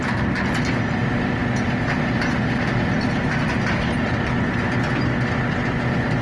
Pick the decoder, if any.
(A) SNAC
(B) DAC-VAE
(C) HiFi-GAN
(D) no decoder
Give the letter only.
D